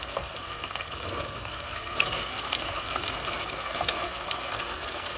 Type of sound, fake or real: fake